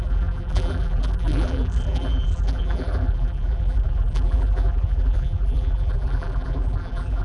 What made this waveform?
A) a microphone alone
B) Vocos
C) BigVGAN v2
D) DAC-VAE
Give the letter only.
C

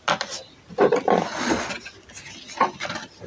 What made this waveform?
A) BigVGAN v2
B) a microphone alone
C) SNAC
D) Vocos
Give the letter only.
B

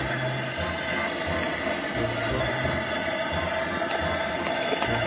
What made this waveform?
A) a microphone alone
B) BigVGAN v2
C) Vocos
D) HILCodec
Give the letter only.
A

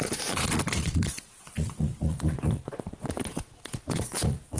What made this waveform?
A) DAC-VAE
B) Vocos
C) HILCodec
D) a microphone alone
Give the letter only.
B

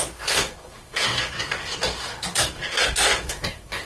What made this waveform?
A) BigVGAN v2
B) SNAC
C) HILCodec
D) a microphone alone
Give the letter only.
B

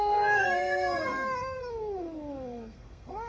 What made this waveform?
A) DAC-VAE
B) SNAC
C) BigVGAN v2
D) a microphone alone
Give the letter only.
B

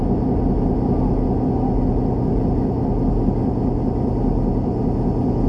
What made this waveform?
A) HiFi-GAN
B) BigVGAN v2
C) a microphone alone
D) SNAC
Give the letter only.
C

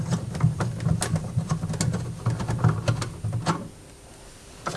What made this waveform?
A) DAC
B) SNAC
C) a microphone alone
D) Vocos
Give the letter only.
C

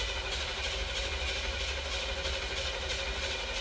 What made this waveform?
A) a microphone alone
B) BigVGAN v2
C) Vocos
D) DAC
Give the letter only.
A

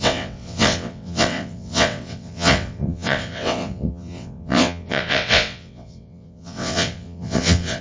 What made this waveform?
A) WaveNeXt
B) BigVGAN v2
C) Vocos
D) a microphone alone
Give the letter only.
A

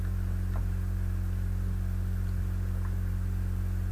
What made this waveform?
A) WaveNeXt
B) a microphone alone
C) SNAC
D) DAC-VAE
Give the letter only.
B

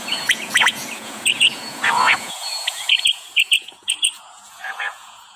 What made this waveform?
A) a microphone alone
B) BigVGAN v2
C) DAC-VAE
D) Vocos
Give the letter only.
D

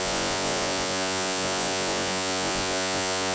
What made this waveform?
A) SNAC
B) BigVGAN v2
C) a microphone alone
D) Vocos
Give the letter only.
D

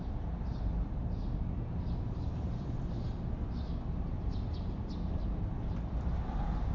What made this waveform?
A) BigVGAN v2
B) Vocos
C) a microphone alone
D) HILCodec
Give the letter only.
C